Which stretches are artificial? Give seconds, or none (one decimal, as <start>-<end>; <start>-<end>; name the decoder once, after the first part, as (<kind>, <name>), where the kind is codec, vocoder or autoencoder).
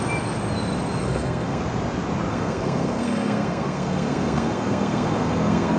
1.0-1.6 (codec, SNAC); 2.3-5.8